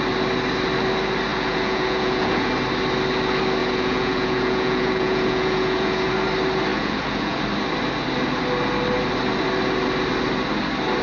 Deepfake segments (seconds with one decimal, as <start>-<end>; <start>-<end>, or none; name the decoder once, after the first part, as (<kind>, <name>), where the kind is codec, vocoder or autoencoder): 1.3-2.5 (vocoder, Vocos); 3.6-6.1; 6.7-7.4